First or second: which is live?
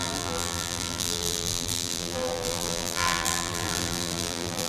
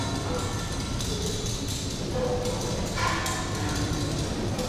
second